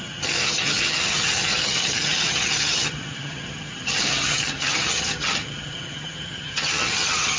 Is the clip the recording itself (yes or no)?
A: no